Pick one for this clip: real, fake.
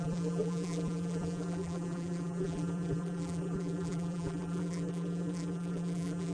fake